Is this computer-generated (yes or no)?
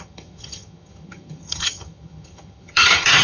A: yes